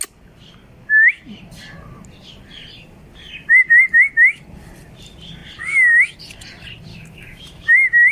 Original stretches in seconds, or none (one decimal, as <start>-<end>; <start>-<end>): 0.0-6.9